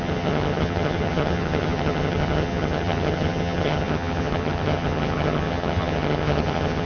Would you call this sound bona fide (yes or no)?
no